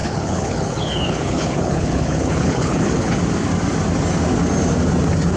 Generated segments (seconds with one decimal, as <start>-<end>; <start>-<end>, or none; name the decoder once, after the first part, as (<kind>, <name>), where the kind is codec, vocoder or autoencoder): 0.0-3.2 (codec, HILCodec)